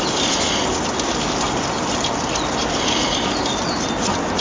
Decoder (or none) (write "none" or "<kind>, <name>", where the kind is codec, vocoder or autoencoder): none